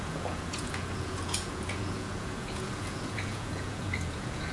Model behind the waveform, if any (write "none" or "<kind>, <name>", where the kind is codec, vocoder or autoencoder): vocoder, Vocos